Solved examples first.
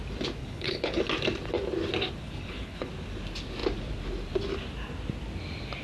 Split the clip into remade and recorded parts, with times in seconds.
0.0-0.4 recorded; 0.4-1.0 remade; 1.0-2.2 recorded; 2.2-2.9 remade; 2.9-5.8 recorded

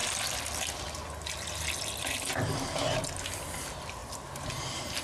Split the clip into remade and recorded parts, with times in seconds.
0.0-5.0 recorded

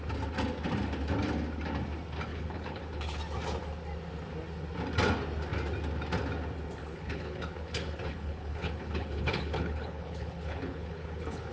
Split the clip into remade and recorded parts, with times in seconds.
0.0-2.3 recorded; 2.3-3.2 remade; 3.2-6.8 recorded; 6.8-11.5 remade

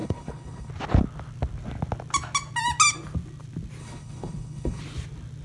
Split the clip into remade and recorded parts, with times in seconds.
0.0-0.7 remade; 0.7-3.8 recorded; 3.8-4.8 remade; 4.8-5.4 recorded

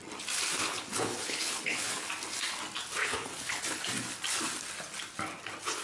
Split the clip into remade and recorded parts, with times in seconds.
0.0-0.6 recorded; 0.6-2.1 remade; 2.1-3.0 recorded; 3.0-3.8 remade; 3.8-5.8 recorded

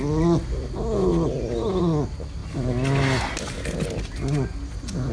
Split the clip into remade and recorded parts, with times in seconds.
0.0-5.1 recorded

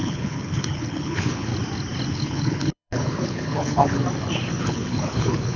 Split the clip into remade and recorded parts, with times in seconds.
0.0-1.5 remade; 1.5-2.1 recorded; 2.1-4.0 remade; 4.0-4.6 recorded; 4.6-5.6 remade